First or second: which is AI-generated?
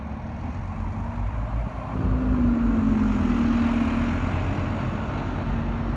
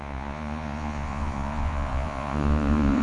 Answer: second